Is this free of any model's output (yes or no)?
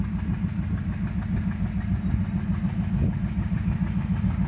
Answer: yes